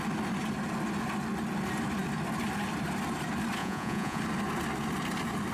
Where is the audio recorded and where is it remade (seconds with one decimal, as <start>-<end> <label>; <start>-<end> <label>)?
0.0-3.6 recorded; 3.6-4.2 remade; 4.2-5.5 recorded